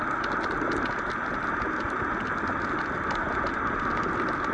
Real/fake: real